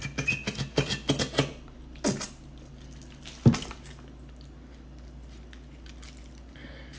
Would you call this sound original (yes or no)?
yes